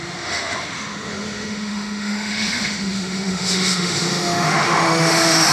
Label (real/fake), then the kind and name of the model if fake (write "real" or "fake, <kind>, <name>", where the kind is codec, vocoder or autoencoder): fake, autoencoder, DAC-VAE